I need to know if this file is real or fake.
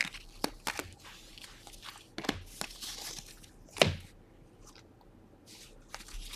real